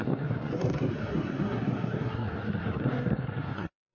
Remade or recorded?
remade